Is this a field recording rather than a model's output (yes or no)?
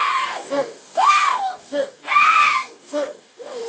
no